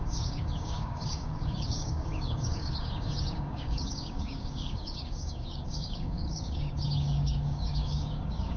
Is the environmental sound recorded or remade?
remade